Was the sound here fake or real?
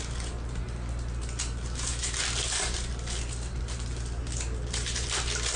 real